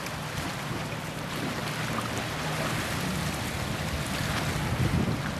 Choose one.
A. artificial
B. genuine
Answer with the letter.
B